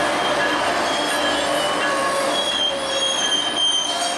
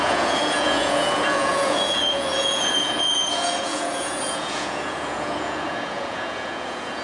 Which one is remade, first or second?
second